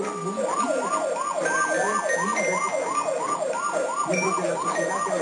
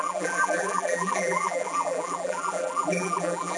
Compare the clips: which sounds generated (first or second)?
second